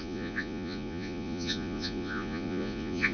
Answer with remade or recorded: remade